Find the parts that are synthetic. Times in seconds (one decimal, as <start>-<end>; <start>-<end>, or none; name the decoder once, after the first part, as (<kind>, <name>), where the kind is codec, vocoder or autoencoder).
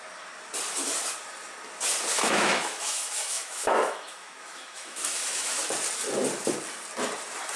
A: 2.1-5.6 (autoencoder, DAC-VAE)